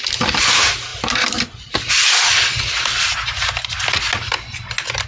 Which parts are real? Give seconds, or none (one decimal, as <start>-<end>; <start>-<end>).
0.0-5.1